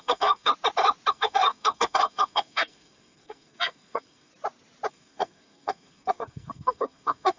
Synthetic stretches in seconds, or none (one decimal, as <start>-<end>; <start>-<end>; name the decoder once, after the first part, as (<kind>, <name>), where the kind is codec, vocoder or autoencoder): 0.0-0.5 (codec, SNAC); 1.1-4.3; 4.9-7.4